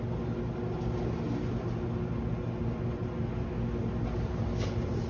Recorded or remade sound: recorded